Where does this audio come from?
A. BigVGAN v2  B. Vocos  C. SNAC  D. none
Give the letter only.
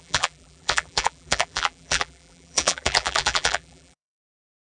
A